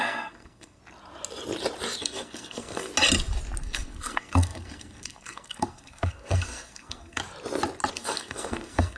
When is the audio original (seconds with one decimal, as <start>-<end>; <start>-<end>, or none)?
0.8-2.0; 2.9-3.6; 7.2-7.9